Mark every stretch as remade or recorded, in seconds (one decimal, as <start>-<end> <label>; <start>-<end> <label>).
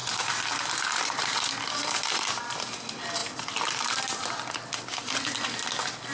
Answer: 0.0-6.1 remade